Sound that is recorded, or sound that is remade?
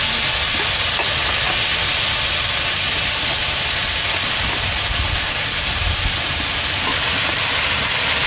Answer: recorded